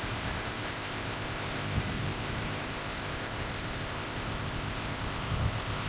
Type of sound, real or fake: fake